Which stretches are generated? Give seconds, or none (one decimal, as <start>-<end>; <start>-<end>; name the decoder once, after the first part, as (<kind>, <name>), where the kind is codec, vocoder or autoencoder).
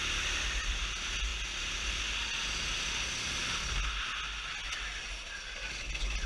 none